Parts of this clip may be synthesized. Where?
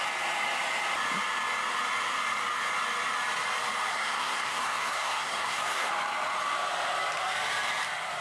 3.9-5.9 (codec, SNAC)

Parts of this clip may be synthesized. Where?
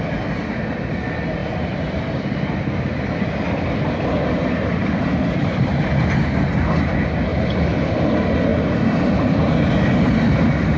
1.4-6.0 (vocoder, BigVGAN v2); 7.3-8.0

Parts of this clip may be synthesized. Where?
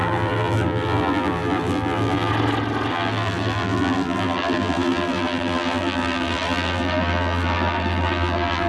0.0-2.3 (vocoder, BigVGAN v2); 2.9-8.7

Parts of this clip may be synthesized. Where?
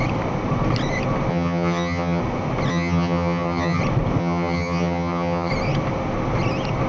1.3-2.2 (vocoder, HiFi-GAN); 2.7-3.8; 4.2-5.5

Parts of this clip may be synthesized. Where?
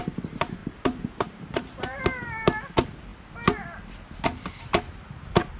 0.6-2.0 (vocoder, BigVGAN v2)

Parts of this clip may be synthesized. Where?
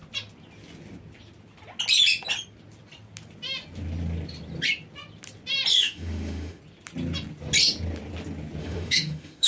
5.7-6.6 (autoencoder, DAC-VAE); 8.6-9.5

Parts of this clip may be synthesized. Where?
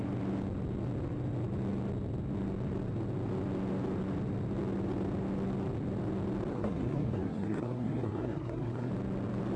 6.5-8.9 (codec, SNAC)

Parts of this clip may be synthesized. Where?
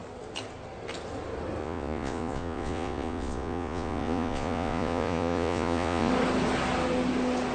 1.6-6.1 (vocoder, Vocos)